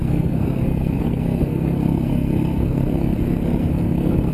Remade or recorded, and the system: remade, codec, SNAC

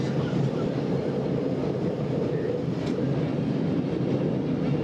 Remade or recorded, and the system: recorded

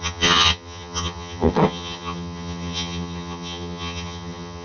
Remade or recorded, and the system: remade, vocoder, HiFi-GAN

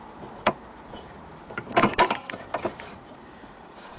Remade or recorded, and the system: remade, vocoder, BigVGAN v2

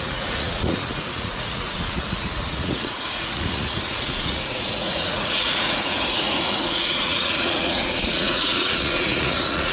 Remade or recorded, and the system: remade, vocoder, Vocos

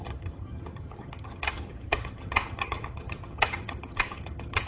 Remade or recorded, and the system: remade, vocoder, HiFi-GAN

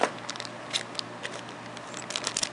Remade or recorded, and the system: recorded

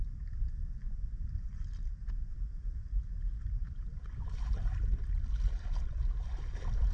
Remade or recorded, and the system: remade, vocoder, BigVGAN v2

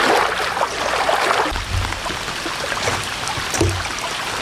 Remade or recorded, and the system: recorded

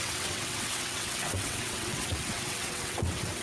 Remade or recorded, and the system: remade, vocoder, WaveNeXt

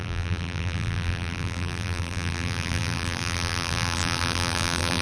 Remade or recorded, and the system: remade, vocoder, BigVGAN v2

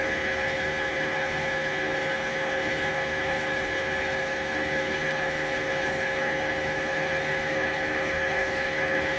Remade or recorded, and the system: remade, codec, HILCodec